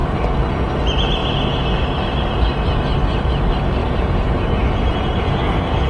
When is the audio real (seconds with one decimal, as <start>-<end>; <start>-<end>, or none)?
0.0-3.8; 5.4-5.9